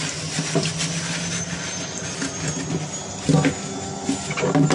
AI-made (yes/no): no